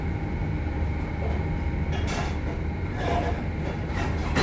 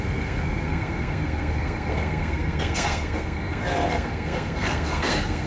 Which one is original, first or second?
first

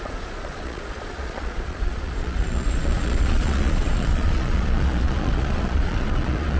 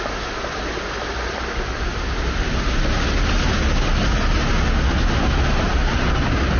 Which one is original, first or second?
second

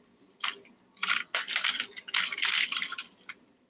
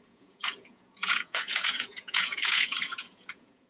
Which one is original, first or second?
first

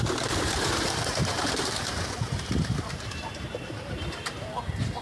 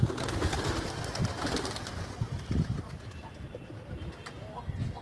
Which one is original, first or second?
second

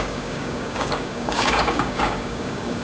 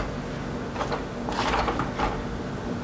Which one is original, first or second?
second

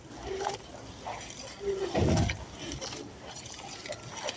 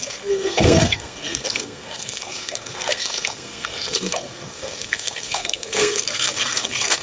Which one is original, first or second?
first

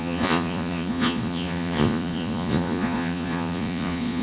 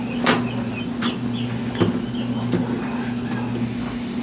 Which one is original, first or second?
second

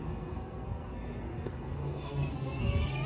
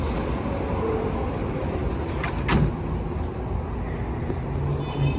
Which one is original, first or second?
second